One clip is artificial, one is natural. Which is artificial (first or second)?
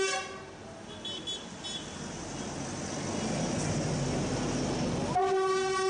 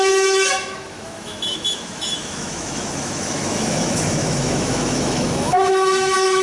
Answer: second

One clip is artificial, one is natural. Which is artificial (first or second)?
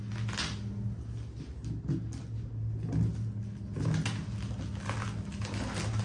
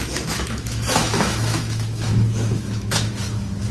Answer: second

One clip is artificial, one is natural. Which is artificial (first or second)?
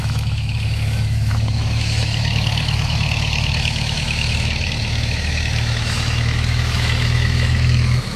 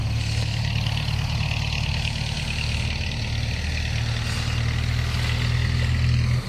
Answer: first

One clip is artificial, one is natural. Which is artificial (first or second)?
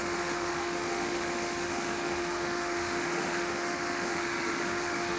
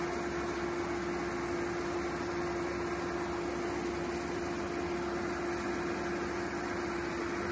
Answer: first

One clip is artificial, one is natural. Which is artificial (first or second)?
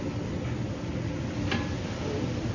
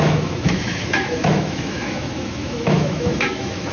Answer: second